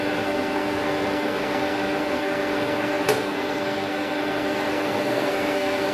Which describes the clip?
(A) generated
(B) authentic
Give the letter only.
A